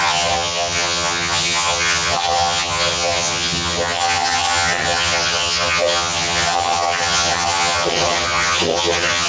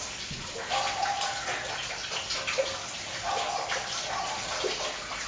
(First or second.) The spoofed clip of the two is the first